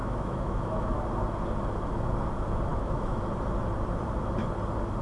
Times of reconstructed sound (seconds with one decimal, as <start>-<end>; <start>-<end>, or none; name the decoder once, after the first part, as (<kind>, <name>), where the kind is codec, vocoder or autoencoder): 0.0-0.9 (autoencoder, DAC-VAE); 2.7-3.3